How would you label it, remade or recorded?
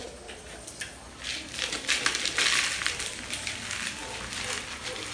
recorded